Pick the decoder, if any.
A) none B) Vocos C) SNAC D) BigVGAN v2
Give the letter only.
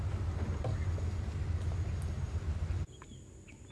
A